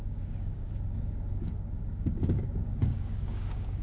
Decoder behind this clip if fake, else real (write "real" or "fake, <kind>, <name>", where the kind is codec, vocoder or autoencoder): fake, codec, DAC